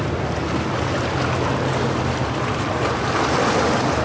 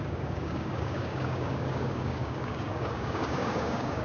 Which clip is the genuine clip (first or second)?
first